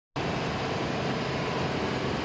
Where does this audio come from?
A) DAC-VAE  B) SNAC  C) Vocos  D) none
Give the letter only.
D